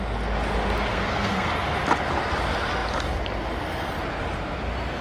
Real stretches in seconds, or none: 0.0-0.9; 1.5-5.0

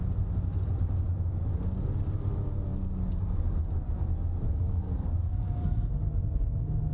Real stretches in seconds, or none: 0.0-4.5; 5.9-6.9

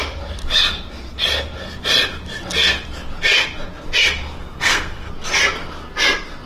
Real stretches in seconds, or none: 0.0-4.4; 5.1-6.5

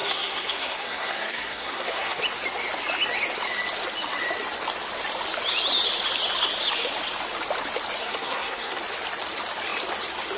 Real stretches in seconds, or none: 2.2-8.0; 8.8-10.4

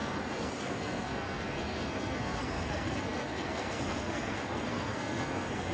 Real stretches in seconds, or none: none

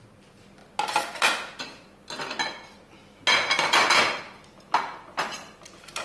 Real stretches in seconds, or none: 0.0-6.0

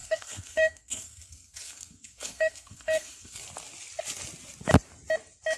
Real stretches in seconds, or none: 3.4-5.6

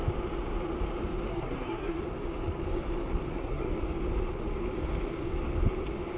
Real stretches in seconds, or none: 0.0-1.3; 2.0-3.3; 3.7-6.2